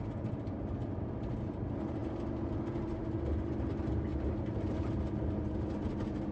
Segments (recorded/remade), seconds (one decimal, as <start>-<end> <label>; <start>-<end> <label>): 0.0-4.1 recorded; 4.1-5.0 remade; 5.0-6.3 recorded